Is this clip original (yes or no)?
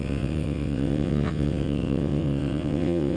no